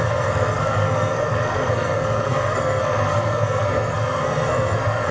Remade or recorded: remade